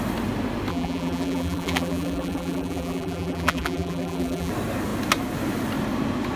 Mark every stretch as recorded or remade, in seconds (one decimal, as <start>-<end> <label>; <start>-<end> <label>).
0.0-0.7 recorded; 0.7-4.5 remade; 4.5-6.4 recorded